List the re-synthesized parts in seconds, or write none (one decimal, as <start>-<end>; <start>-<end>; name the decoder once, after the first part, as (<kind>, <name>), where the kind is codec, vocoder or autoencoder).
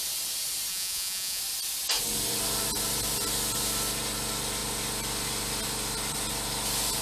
0.7-1.4 (vocoder, Vocos)